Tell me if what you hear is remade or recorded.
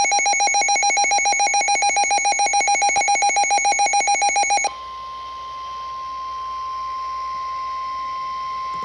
recorded